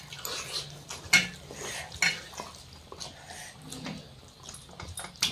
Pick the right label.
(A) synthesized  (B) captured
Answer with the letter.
B